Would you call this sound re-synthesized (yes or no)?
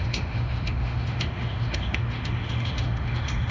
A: yes